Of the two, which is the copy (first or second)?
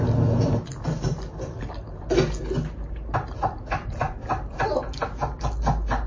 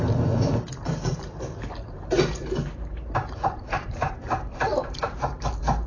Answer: second